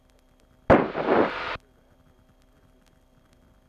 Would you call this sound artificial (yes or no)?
no